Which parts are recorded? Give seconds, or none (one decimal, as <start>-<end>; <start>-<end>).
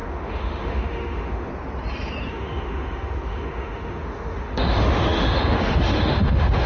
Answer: 1.5-2.3